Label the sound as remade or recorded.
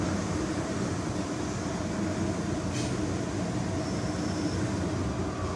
recorded